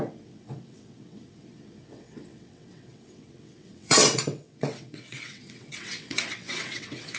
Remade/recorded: remade